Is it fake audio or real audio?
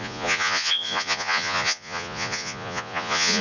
fake